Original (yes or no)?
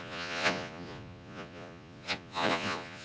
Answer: no